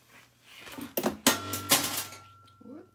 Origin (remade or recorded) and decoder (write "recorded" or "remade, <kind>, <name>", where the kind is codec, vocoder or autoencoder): recorded